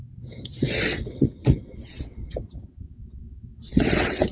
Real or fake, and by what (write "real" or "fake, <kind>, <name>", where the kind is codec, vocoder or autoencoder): fake, vocoder, WaveNeXt